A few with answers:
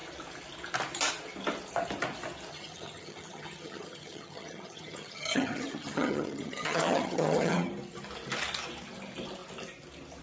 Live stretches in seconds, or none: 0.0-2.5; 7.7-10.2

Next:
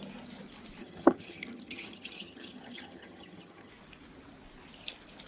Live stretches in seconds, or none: 0.0-0.8; 3.7-5.3